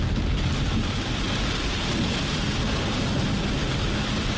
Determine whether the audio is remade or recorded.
recorded